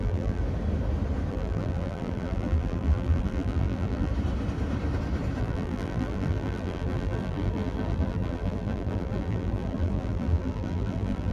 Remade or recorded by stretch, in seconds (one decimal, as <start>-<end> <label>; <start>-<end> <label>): 0.0-0.4 remade; 0.4-1.3 recorded; 1.3-4.1 remade; 4.1-5.4 recorded; 5.4-11.3 remade